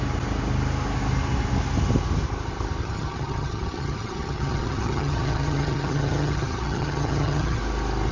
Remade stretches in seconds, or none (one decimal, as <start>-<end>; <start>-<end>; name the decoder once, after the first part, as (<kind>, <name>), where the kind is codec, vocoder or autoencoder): 2.8-7.6 (vocoder, HiFi-GAN)